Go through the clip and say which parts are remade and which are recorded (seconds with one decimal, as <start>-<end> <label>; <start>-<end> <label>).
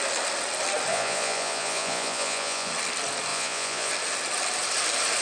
0.0-0.9 recorded; 0.9-2.7 remade; 2.7-3.3 recorded; 3.3-3.9 remade; 3.9-5.2 recorded